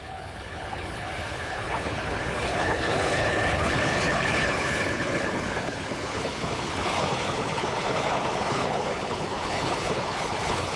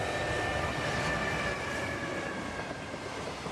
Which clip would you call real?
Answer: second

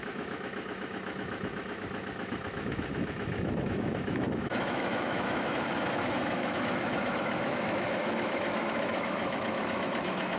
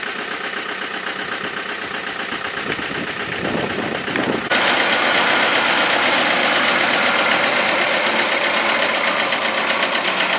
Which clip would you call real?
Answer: second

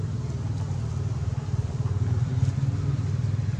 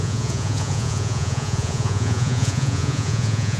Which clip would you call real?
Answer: first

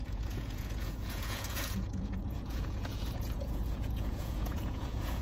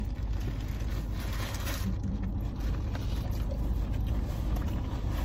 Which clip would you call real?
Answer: second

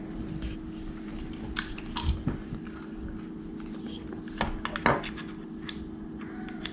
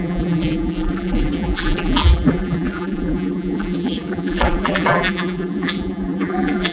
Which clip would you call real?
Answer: first